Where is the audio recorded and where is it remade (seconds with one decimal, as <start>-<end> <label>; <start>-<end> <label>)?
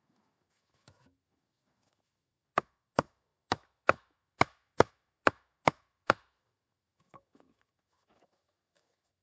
0.0-9.2 remade